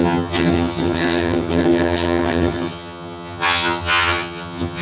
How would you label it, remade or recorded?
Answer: remade